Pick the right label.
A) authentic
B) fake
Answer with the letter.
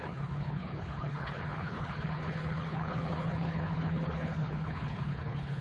B